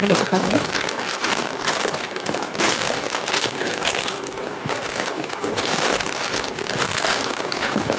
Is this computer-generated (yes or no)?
yes